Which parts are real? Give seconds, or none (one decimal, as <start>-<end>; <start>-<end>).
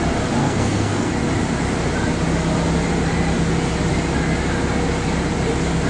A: 0.0-0.4; 1.1-5.9